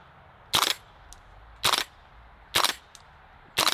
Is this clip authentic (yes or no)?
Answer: yes